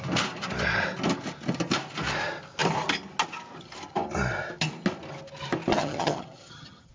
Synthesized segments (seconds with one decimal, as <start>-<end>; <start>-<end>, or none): 5.7-6.9